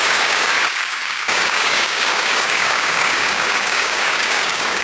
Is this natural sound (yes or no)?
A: no